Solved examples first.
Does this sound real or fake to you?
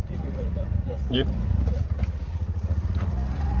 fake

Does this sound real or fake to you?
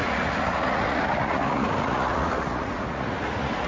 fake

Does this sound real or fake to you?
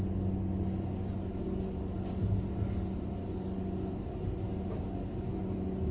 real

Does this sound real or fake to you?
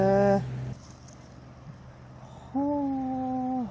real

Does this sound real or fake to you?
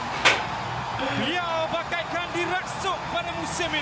real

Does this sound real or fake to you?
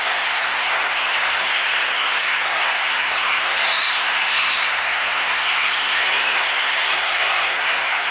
fake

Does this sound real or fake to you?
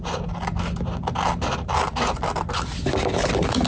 real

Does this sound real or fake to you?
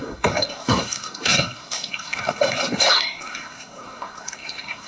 fake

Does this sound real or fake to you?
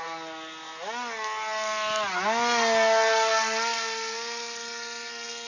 real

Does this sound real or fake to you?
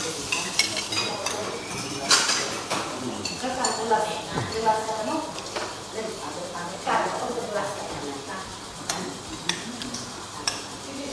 fake